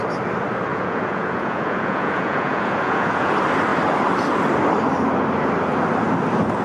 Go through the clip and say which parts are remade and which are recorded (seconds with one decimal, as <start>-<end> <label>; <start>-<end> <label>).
0.0-0.7 recorded; 0.7-3.3 remade; 3.3-6.6 recorded